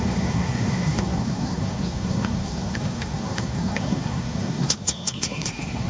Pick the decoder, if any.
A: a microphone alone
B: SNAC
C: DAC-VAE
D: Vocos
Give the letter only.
B